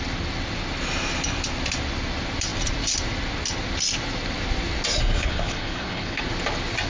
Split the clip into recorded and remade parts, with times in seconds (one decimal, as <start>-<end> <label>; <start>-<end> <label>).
0.0-5.2 recorded; 5.2-6.2 remade; 6.2-6.9 recorded